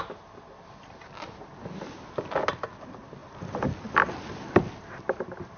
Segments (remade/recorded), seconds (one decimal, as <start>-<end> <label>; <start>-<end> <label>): 0.0-5.6 recorded